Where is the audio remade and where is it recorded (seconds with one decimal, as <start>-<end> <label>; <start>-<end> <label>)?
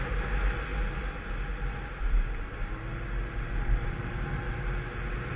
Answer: 0.0-5.4 recorded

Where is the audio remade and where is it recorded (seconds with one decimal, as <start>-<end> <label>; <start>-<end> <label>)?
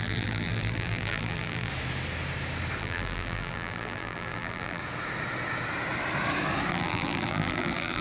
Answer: 0.0-1.7 remade; 1.7-2.8 recorded; 2.8-4.8 remade; 4.8-6.7 recorded; 6.7-8.0 remade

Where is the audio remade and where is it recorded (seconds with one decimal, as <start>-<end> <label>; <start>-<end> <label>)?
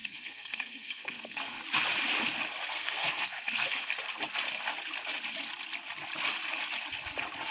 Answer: 0.0-1.6 remade; 1.6-2.7 recorded; 2.7-3.9 remade; 3.9-7.5 recorded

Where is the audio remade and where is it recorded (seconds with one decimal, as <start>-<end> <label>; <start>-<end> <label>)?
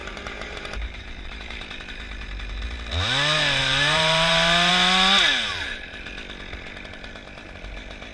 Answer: 0.0-2.6 remade; 2.6-3.6 recorded; 3.6-4.7 remade; 4.7-5.5 recorded; 5.5-6.1 remade; 6.1-8.1 recorded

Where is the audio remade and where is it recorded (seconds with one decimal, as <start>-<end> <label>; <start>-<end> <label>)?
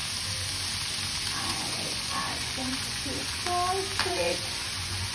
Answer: 0.0-1.4 recorded; 1.4-3.4 remade; 3.4-4.0 recorded; 4.0-5.1 remade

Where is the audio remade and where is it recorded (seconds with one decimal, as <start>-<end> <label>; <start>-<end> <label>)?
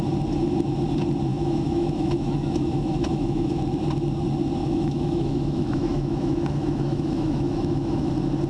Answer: 0.0-1.3 recorded; 1.3-3.6 remade; 3.6-4.6 recorded; 4.6-8.1 remade; 8.1-8.5 recorded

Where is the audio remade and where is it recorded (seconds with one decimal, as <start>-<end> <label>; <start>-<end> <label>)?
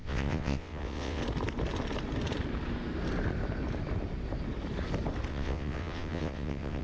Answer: 0.0-1.2 remade; 1.2-5.3 recorded; 5.3-6.8 remade